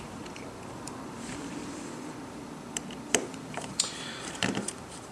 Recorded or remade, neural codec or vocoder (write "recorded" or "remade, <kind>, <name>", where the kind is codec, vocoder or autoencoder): remade, vocoder, BigVGAN v2